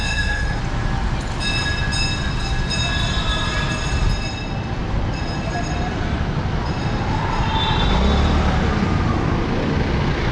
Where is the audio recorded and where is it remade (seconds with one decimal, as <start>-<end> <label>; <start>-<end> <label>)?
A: 0.0-0.6 remade; 0.6-10.3 recorded